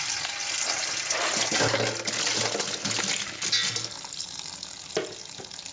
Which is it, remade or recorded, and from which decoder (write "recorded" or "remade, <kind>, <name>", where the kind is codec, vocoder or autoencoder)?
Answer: recorded